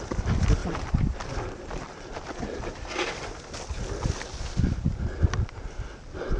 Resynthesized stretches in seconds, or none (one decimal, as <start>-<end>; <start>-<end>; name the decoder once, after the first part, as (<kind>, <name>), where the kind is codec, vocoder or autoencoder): none